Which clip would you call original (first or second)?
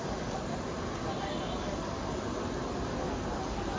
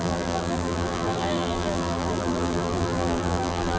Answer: first